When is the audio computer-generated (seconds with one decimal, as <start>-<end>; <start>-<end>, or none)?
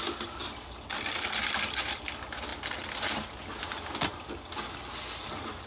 0.4-2.1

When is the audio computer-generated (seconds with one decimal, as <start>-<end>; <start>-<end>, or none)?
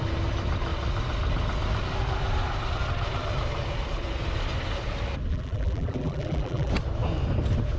5.3-6.7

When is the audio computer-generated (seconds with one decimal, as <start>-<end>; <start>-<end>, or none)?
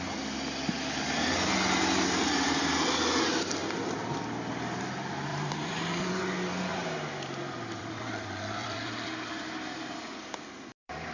5.3-6.2; 6.7-11.1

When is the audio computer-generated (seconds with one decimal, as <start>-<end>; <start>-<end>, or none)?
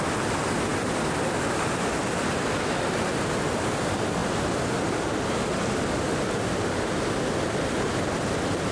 none